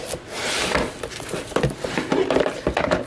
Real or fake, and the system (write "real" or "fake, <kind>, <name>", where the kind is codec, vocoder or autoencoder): fake, vocoder, BigVGAN v2